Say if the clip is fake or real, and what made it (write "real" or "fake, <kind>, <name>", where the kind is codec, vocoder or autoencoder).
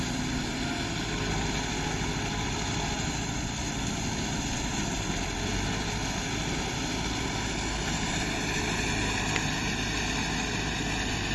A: real